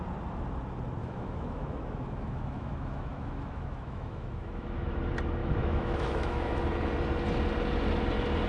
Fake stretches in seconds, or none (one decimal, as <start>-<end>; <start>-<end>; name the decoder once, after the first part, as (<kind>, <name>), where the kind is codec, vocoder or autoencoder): 1.0-5.0 (autoencoder, DAC-VAE); 5.4-6.6